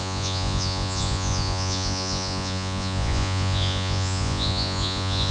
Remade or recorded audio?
remade